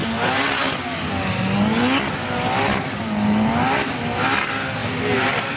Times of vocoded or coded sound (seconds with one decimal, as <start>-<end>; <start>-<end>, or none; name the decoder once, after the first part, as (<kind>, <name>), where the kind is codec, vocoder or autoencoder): 4.8-5.6 (vocoder, BigVGAN v2)